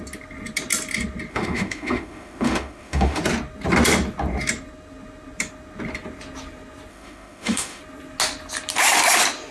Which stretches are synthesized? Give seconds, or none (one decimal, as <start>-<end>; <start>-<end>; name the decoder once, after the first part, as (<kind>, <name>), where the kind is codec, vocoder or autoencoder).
1.3-3.2 (autoencoder, DAC-VAE); 6.9-7.8